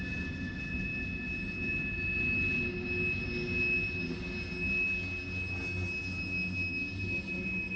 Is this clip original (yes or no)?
yes